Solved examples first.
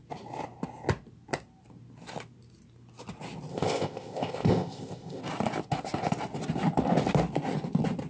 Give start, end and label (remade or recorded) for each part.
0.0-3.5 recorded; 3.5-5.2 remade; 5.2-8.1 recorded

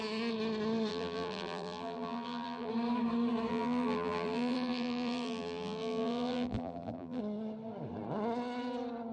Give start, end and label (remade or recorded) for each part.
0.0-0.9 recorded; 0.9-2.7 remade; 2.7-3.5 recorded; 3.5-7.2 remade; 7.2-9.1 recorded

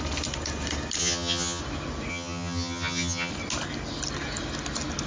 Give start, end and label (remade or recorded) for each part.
0.0-1.0 recorded; 1.0-1.6 remade; 1.6-2.1 recorded; 2.1-3.3 remade; 3.3-5.1 recorded

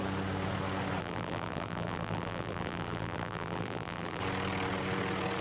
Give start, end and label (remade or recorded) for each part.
0.0-1.0 recorded; 1.0-4.2 remade; 4.2-5.4 recorded